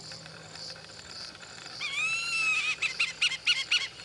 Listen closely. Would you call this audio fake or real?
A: fake